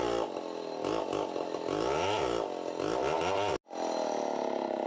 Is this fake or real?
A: real